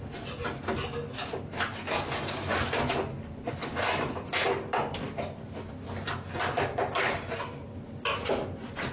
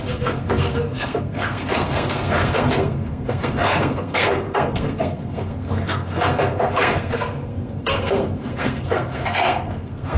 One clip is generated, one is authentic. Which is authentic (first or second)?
first